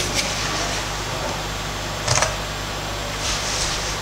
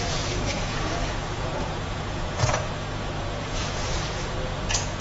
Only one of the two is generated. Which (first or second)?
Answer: second